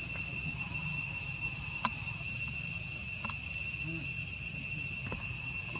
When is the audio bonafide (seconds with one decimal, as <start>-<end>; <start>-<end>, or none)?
0.0-5.8